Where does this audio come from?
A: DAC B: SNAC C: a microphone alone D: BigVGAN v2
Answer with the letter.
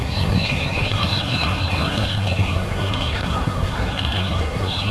B